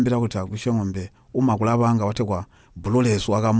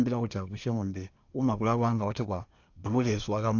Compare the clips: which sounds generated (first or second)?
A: second